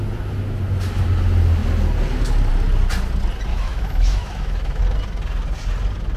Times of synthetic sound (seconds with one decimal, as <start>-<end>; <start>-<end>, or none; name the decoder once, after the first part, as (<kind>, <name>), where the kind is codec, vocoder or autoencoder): 3.5-4.8 (autoencoder, DAC-VAE)